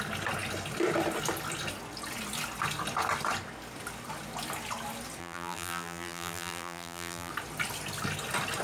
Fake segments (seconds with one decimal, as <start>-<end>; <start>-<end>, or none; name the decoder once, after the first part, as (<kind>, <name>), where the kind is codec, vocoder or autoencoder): 5.2-7.3 (vocoder, BigVGAN v2)